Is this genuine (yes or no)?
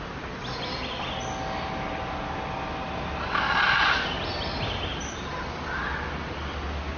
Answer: yes